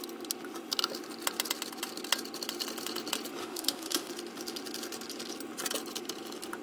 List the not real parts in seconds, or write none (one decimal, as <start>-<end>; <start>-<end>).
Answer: 3.4-4.1